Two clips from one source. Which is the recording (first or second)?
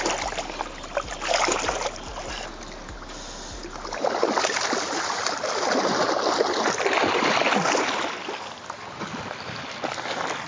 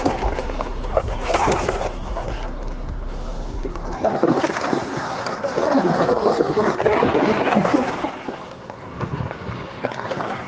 first